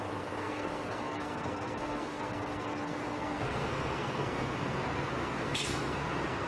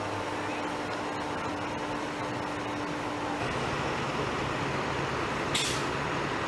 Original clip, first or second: second